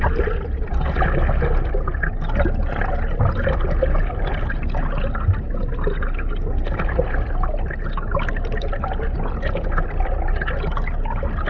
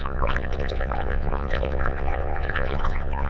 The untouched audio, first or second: first